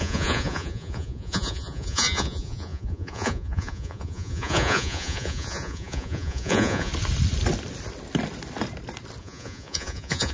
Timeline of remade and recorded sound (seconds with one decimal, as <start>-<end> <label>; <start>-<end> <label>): 0.0-6.9 remade; 6.9-9.2 recorded; 9.2-10.3 remade